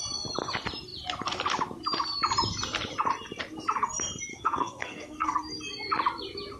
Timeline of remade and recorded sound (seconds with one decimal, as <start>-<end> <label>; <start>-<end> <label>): 0.0-4.3 recorded; 4.3-5.4 remade; 5.4-6.6 recorded